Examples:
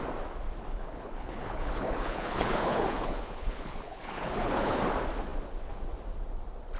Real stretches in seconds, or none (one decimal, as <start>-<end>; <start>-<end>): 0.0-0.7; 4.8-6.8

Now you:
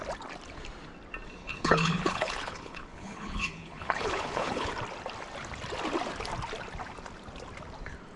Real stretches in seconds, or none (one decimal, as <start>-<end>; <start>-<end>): 0.0-1.4; 4.7-8.2

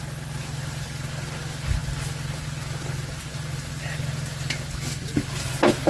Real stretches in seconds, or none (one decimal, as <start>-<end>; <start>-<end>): 0.0-5.9

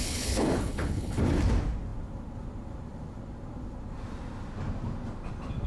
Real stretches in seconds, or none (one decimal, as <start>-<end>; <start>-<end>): 1.2-5.7

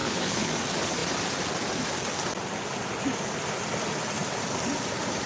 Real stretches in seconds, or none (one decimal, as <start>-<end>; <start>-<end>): 0.5-5.3

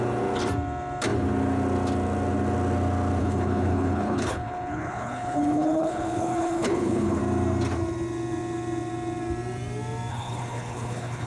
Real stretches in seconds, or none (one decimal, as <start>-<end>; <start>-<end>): 0.0-3.2; 7.2-10.1

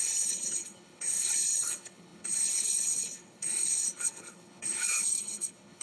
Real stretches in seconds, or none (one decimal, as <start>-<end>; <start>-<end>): none